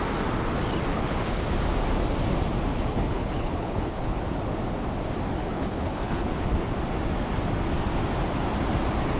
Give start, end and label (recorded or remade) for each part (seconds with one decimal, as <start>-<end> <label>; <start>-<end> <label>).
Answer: 0.0-0.9 recorded; 0.9-1.4 remade; 1.4-2.7 recorded; 2.7-4.2 remade; 4.2-5.4 recorded; 5.4-6.7 remade; 6.7-9.2 recorded